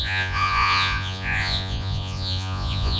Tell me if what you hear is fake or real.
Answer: fake